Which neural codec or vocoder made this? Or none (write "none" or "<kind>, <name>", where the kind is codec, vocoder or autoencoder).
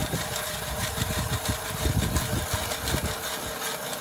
none